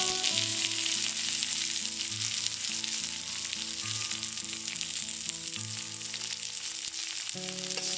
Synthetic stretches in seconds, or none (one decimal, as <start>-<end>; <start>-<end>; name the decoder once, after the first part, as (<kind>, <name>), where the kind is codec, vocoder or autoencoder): none